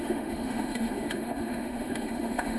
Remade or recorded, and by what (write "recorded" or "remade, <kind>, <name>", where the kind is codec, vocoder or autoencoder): remade, autoencoder, DAC-VAE